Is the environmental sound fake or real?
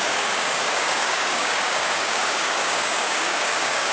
fake